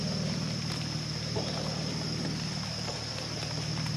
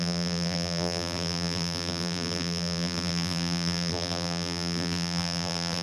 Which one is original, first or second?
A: first